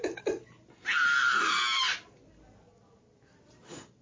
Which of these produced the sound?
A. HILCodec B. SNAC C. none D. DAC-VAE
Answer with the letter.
C